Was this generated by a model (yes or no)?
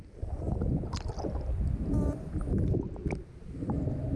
no